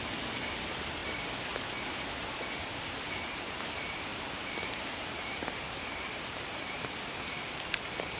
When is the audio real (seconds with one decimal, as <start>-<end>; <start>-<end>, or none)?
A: 0.0-4.1; 6.9-8.2